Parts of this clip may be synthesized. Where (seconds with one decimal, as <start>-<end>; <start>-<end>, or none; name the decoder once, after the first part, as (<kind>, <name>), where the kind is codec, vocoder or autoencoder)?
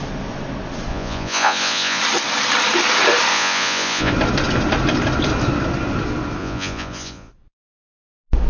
0.9-2.0 (vocoder, Vocos); 3.3-4.1; 6.4-7.3